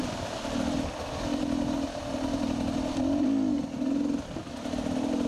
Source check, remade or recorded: recorded